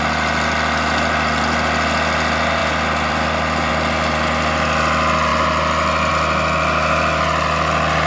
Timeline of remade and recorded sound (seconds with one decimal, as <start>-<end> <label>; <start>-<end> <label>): 0.0-2.6 recorded; 2.6-3.7 remade; 3.7-5.3 recorded; 5.3-6.1 remade; 6.1-8.1 recorded